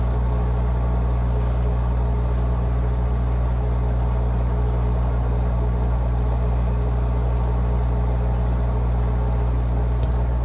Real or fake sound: real